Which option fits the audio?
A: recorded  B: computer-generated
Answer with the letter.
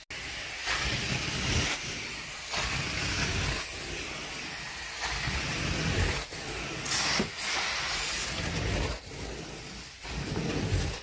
A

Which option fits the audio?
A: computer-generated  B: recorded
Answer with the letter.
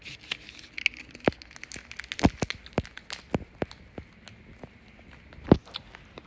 B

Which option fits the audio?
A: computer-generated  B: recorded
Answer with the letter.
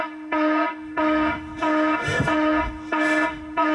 A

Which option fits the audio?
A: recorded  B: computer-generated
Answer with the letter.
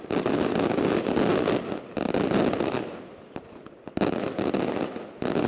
A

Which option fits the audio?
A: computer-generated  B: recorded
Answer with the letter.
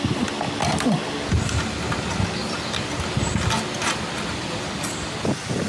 B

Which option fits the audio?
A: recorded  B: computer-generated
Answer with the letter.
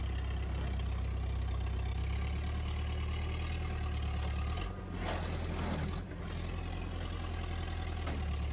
A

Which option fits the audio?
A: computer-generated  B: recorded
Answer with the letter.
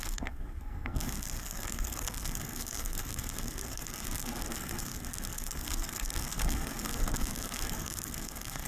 A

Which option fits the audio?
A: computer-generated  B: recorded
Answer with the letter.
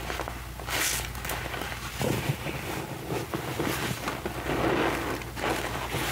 B